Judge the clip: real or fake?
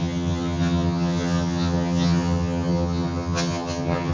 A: fake